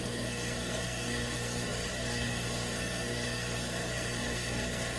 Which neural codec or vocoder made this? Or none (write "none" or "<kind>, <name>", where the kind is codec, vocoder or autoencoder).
codec, SNAC